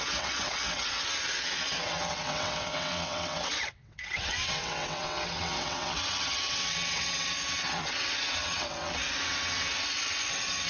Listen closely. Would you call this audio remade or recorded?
remade